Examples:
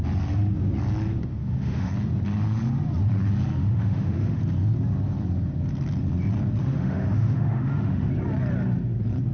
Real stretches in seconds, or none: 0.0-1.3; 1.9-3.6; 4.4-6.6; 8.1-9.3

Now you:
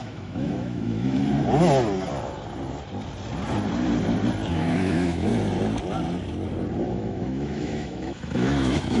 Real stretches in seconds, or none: 1.2-4.5; 5.3-6.9

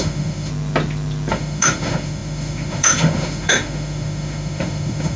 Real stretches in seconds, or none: 0.5-1.3

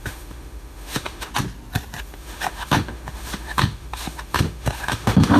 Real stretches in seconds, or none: 1.3-2.0

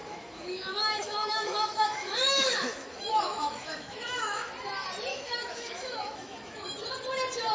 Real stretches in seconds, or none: 4.5-5.1; 6.8-7.5